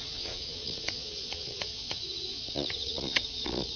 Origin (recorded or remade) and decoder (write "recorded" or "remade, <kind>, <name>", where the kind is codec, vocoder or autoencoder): remade, vocoder, Vocos